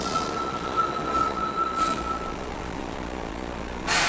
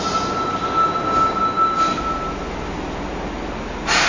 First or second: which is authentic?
second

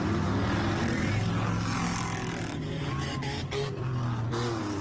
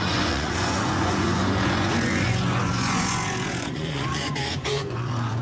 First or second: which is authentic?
first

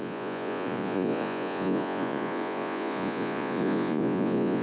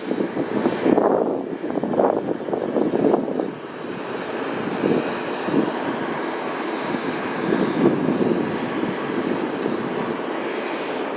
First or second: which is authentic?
second